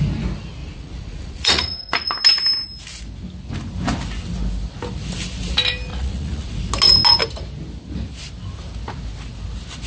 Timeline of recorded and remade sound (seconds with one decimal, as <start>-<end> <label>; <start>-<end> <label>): 0.0-0.6 recorded; 0.6-2.1 remade; 2.1-5.9 recorded; 5.9-6.5 remade; 6.5-9.9 recorded